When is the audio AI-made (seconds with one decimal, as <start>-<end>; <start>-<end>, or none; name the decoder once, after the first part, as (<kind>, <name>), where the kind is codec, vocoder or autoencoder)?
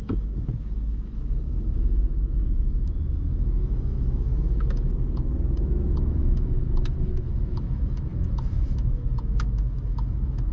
0.0-10.5 (autoencoder, DAC-VAE)